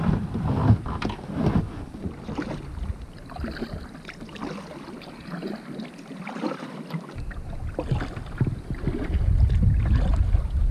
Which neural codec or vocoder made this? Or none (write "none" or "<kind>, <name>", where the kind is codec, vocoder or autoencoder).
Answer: none